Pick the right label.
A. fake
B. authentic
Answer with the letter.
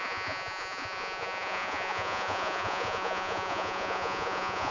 A